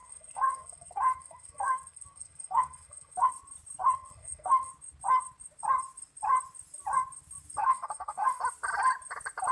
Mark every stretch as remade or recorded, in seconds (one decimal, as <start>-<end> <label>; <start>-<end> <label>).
0.0-3.3 remade; 3.3-3.8 recorded; 3.8-4.7 remade; 4.7-7.6 recorded; 7.6-8.4 remade; 8.4-9.5 recorded